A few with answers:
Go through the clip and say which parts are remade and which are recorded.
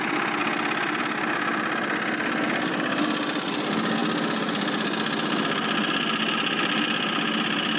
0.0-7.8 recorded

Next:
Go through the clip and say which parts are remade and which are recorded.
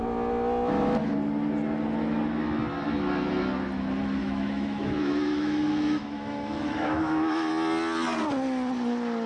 0.0-4.2 recorded; 4.2-7.5 remade; 7.5-9.3 recorded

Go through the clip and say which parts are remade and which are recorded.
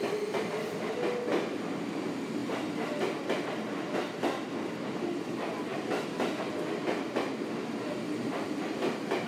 0.0-9.3 recorded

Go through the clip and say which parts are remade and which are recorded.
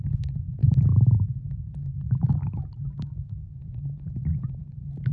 0.0-1.9 recorded; 1.9-3.4 remade; 3.4-5.1 recorded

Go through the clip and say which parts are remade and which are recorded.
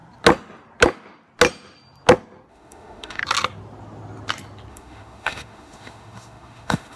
0.0-2.5 recorded; 2.5-3.2 remade; 3.2-4.7 recorded; 4.7-7.0 remade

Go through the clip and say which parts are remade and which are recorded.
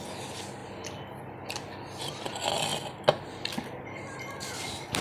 0.0-5.0 recorded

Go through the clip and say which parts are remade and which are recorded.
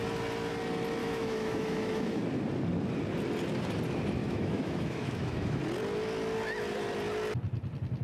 0.0-1.0 recorded; 1.0-2.2 remade; 2.2-4.2 recorded; 4.2-5.6 remade; 5.6-8.0 recorded